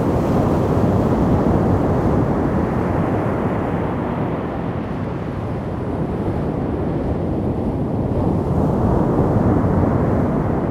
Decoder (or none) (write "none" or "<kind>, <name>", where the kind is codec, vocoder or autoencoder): none